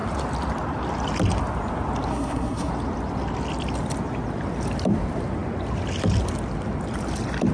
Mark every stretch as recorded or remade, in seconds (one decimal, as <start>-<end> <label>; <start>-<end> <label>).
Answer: 0.0-2.1 recorded; 2.1-2.7 remade; 2.7-7.5 recorded